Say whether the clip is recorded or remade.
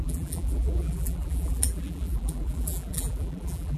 remade